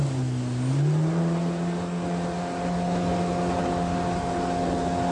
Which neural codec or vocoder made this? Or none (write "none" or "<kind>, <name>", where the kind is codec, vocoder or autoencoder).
none